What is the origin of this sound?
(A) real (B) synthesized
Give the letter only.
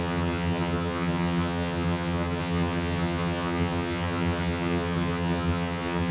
B